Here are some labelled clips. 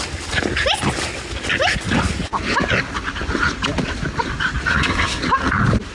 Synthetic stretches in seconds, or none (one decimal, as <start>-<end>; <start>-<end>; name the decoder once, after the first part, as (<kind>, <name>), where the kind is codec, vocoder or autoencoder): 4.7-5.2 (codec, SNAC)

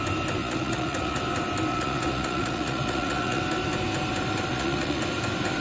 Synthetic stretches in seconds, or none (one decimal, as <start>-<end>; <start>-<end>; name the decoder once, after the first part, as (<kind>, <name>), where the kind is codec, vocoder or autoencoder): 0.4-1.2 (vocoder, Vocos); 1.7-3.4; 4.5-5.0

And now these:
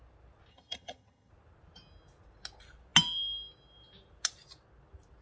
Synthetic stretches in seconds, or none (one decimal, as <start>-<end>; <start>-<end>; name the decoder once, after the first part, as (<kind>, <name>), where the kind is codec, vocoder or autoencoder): 0.5-1.3 (vocoder, HiFi-GAN)